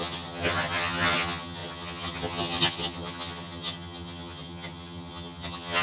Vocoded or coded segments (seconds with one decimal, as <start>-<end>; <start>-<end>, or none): 0.0-5.8

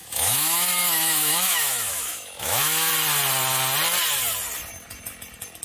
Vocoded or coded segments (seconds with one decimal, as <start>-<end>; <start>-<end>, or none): 0.0-2.9

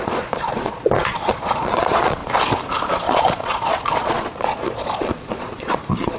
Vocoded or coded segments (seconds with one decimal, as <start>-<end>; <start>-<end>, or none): 0.0-2.2; 2.9-6.2

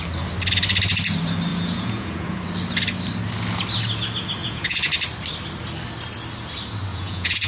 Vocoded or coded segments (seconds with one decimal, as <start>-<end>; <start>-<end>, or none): 1.5-2.4; 4.4-4.9; 6.9-7.5